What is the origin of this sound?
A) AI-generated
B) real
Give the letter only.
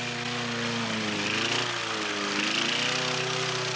B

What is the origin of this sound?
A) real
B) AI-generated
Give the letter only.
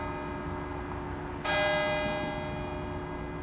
A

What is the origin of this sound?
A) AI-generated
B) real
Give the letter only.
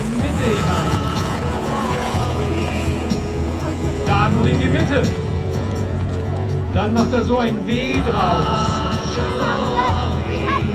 A